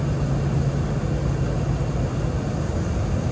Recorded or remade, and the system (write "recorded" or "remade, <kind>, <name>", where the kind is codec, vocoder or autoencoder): recorded